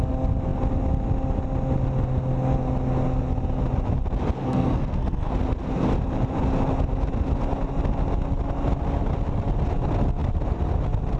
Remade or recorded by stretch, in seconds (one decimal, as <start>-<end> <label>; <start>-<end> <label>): 0.0-4.4 recorded; 4.4-5.3 remade; 5.3-11.2 recorded